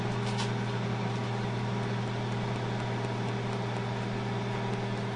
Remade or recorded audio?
recorded